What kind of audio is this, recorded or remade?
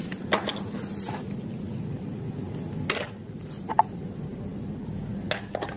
recorded